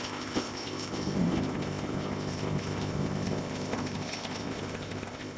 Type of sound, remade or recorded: remade